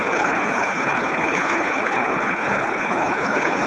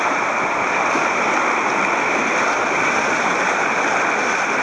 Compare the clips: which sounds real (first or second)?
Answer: second